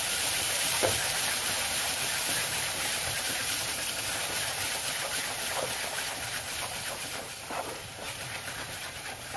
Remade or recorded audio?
remade